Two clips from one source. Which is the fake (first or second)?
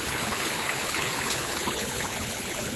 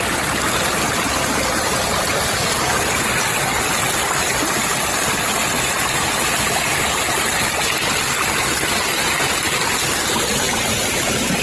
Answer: first